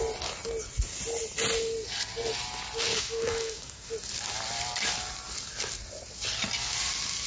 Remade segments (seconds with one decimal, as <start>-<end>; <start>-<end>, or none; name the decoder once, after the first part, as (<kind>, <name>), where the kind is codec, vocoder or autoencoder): 2.9-3.9 (codec, DAC)